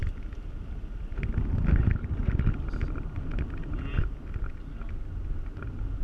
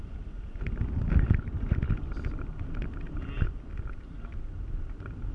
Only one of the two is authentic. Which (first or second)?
first